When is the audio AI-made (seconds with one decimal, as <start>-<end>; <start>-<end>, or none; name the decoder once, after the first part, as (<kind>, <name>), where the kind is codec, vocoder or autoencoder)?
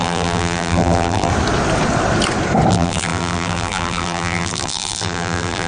0.0-1.3 (vocoder, BigVGAN v2); 2.7-5.7